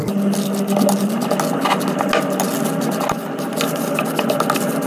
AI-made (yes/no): no